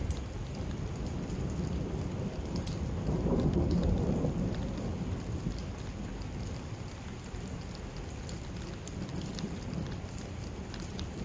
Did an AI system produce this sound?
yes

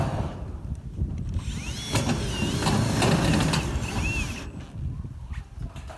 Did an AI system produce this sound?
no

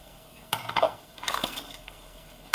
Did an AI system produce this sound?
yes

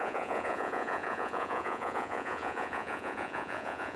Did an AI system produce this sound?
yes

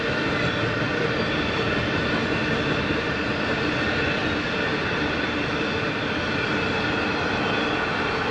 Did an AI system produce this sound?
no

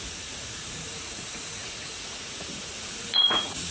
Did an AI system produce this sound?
yes